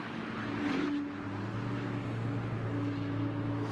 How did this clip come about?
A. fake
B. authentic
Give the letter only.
B